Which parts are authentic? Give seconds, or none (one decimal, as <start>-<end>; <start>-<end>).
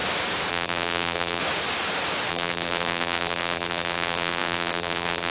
0.0-0.5; 1.4-2.3